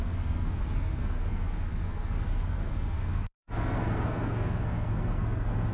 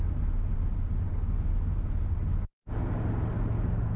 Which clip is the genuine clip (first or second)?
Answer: second